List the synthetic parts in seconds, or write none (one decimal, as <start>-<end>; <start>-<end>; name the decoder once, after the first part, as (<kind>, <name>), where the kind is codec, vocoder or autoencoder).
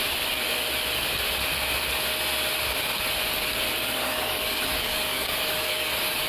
3.8-6.3 (codec, DAC)